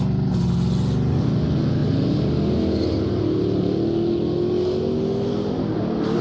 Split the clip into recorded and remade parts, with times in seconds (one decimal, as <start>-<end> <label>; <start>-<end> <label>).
0.0-6.2 recorded